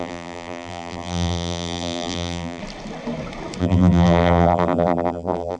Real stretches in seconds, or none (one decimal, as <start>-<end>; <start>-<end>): 2.6-3.6